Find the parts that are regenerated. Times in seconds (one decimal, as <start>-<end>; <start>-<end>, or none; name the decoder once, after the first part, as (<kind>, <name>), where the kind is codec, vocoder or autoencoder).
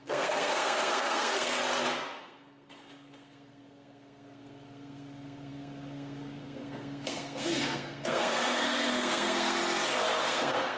0.0-1.6 (codec, SNAC); 2.2-9.6; 10.2-10.8